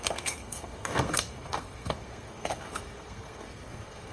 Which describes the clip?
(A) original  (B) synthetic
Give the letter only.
B